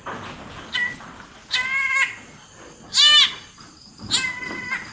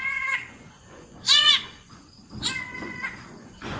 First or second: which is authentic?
first